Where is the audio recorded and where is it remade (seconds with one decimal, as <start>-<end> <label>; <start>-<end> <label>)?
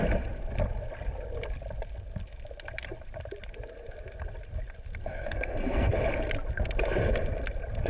0.0-5.0 recorded; 5.0-5.9 remade; 5.9-7.9 recorded